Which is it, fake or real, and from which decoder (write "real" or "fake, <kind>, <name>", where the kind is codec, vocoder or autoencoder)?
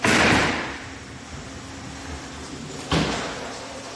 real